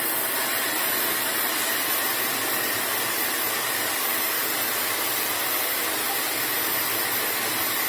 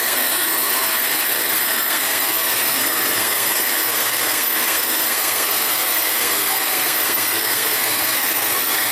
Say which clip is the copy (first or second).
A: second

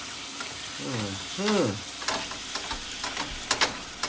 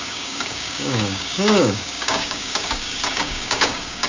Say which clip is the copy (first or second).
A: second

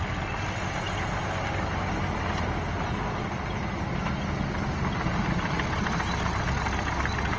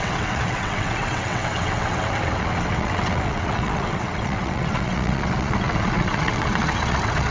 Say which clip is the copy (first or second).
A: second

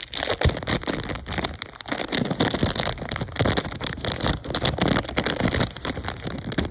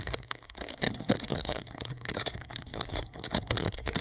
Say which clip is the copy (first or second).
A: second